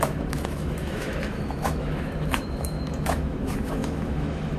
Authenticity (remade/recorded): remade